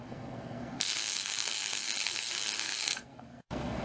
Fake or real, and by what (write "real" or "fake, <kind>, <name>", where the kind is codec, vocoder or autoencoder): fake, codec, SNAC